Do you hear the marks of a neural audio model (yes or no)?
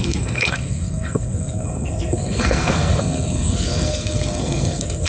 yes